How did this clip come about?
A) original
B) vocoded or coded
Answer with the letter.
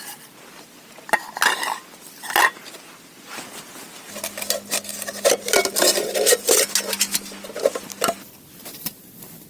A